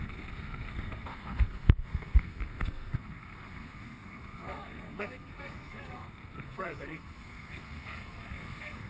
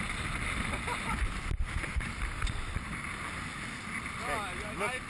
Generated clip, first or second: first